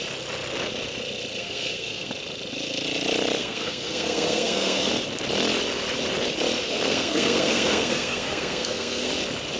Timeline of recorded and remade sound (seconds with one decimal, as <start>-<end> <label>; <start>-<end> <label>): 0.0-1.4 recorded; 1.4-2.1 remade; 2.1-3.4 recorded; 3.4-4.9 remade; 4.9-6.6 recorded; 6.6-9.1 remade; 9.1-9.6 recorded

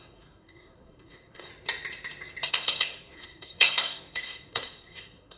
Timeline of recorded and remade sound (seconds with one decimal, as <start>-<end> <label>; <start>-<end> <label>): 0.0-1.5 remade; 1.5-2.5 recorded; 2.5-5.4 remade

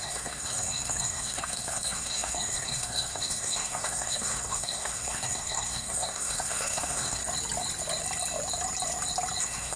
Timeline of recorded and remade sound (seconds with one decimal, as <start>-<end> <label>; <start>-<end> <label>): 0.0-7.2 remade; 7.2-9.4 recorded; 9.4-9.8 remade

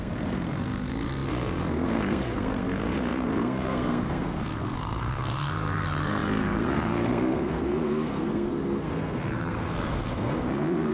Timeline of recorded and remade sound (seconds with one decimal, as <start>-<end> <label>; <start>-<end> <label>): 0.0-10.9 remade

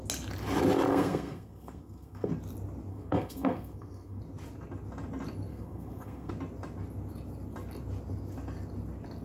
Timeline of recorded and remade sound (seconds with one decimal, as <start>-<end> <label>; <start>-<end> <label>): 0.0-0.9 recorded; 0.9-2.3 remade; 2.3-2.9 recorded; 2.9-4.2 remade; 4.2-5.5 recorded; 5.5-6.3 remade; 6.3-9.2 recorded

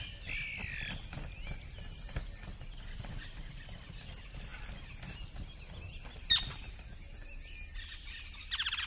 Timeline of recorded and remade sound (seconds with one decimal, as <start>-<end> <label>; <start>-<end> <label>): 0.0-8.9 recorded

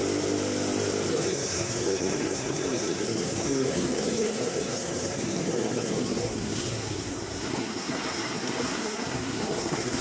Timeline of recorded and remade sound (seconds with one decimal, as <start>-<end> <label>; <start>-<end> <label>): 0.0-1.1 recorded; 1.1-10.0 remade

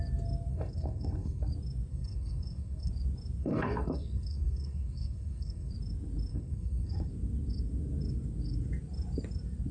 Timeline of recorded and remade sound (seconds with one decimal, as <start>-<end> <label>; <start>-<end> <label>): 0.0-0.5 recorded; 0.5-1.5 remade; 1.5-1.9 recorded; 1.9-2.9 remade; 2.9-3.4 recorded; 3.4-5.7 remade; 5.7-6.3 recorded; 6.3-7.1 remade; 7.1-9.7 recorded